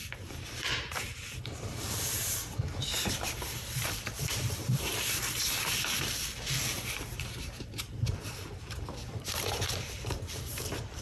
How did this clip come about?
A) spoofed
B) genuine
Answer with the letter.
A